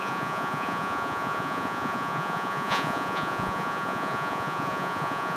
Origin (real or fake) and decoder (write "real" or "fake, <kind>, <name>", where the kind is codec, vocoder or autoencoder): fake, vocoder, Vocos